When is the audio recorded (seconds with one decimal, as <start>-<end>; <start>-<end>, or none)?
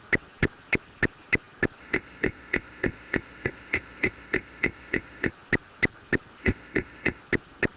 0.0-1.8; 5.3-6.4; 7.2-7.8